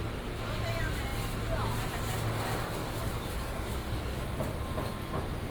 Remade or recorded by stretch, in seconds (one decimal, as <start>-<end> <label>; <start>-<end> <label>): 0.0-2.8 recorded; 2.8-4.2 remade; 4.2-5.5 recorded